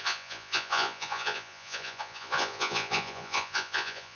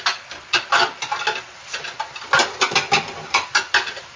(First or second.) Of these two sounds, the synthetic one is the first